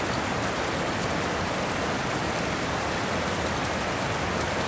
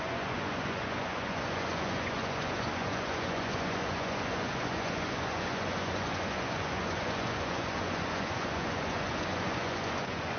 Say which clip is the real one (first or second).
first